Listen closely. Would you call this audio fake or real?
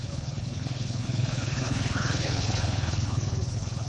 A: fake